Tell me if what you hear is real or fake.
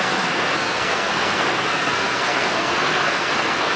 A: fake